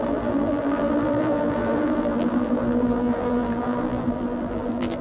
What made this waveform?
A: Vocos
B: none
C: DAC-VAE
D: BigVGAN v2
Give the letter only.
D